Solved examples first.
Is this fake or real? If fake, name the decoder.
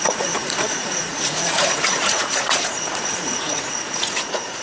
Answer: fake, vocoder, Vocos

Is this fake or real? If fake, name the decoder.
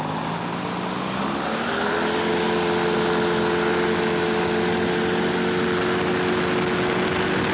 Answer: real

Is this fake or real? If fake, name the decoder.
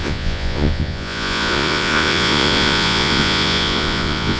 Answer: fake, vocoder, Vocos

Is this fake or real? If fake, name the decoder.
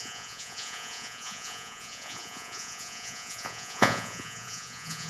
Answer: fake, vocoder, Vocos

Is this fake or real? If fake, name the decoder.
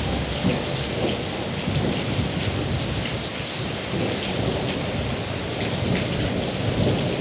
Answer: real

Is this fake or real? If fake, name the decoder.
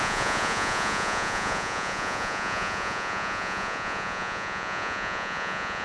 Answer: fake, vocoder, Vocos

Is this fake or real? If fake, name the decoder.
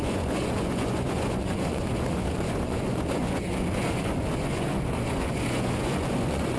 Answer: fake, vocoder, Vocos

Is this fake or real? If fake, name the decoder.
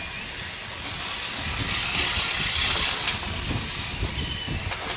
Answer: real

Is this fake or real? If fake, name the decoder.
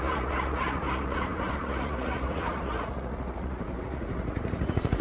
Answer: fake, vocoder, Vocos